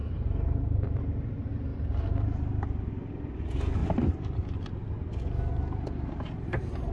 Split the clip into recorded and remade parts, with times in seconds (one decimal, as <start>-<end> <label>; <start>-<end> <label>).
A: 0.0-0.8 remade; 0.8-3.8 recorded; 3.8-5.5 remade; 5.5-6.9 recorded